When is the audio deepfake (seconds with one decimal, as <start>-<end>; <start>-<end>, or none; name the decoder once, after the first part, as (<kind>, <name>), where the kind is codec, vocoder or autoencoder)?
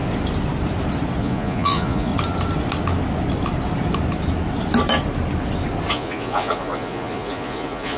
1.2-2.1 (vocoder, Vocos); 5.9-8.0